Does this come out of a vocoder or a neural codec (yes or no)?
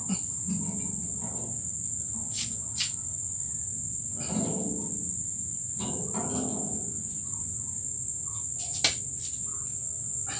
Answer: no